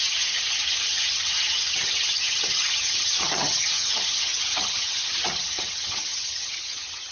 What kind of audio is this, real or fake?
fake